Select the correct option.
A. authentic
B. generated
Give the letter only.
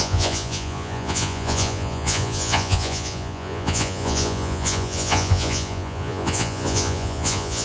B